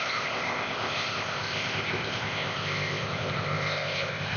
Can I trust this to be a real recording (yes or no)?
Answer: no